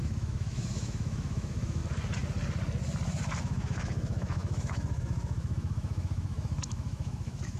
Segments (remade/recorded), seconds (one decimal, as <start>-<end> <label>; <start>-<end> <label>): 0.0-1.8 remade; 1.8-3.4 recorded; 3.4-7.6 remade